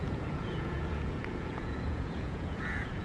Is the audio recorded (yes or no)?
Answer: no